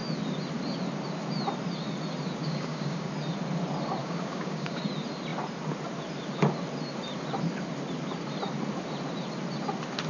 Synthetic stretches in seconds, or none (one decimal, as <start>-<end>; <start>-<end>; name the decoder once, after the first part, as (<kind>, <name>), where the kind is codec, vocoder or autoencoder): 2.4-3.1 (codec, DAC); 4.0-4.8

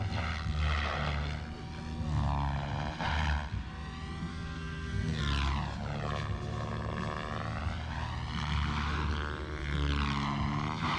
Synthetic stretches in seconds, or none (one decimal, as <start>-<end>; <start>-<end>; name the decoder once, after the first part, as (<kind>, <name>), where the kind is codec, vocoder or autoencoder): 4.3-5.2 (codec, SNAC)

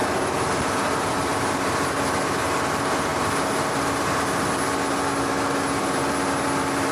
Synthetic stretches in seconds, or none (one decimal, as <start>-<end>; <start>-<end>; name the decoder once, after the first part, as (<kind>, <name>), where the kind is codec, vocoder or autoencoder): none